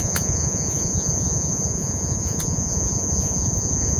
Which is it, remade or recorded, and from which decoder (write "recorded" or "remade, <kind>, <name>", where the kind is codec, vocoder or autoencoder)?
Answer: remade, vocoder, Vocos